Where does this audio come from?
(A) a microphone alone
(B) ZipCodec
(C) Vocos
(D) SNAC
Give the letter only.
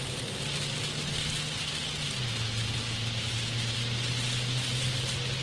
A